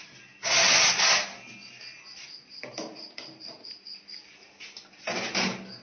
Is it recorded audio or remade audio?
recorded